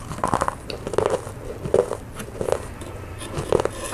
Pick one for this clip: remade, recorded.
recorded